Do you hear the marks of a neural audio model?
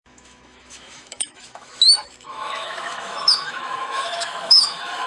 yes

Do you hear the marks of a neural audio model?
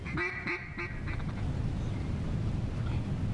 no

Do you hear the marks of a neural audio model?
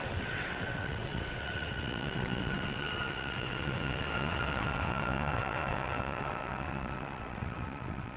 yes